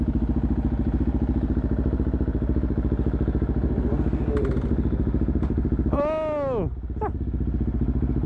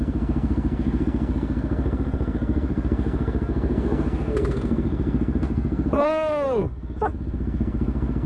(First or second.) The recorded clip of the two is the first